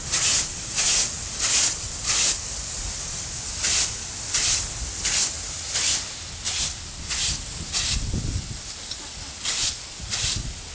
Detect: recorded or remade recorded